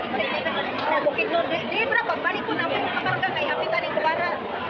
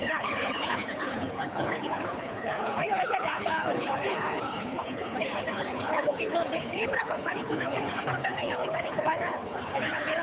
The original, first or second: first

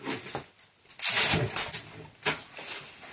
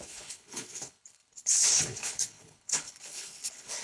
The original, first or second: first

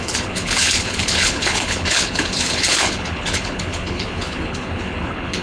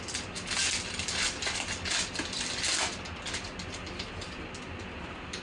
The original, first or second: second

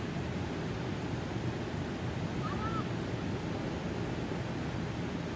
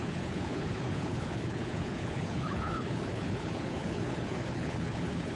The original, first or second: first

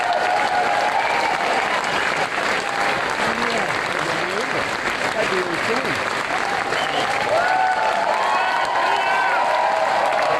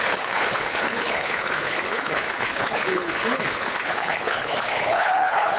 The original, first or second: first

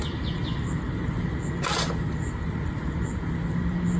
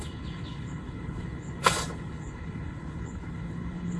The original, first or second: first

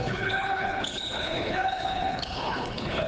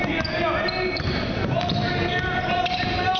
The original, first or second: second